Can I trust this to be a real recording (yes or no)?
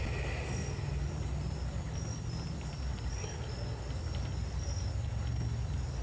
yes